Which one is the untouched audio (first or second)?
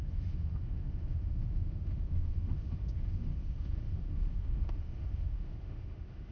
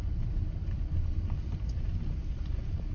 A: second